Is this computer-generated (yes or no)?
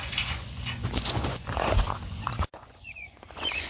yes